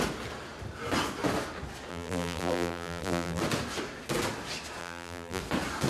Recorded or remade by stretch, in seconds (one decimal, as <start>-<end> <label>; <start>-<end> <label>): 0.0-1.9 recorded; 1.9-3.4 remade; 3.4-4.8 recorded; 4.8-5.4 remade; 5.4-5.9 recorded